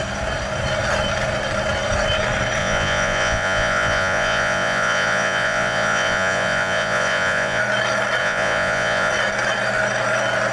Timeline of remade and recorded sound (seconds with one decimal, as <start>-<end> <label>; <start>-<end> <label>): 0.0-2.6 recorded; 2.6-7.6 remade; 7.6-8.2 recorded; 8.2-9.1 remade; 9.1-10.5 recorded